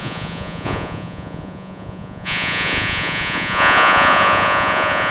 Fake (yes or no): yes